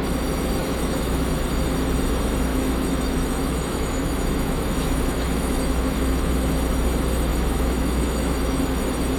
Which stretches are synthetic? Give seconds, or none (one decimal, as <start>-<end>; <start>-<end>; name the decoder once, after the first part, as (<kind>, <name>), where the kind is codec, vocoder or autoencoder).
0.6-1.3 (autoencoder, DAC-VAE); 2.5-6.3; 7.3-8.6